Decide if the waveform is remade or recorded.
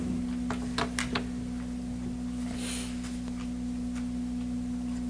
recorded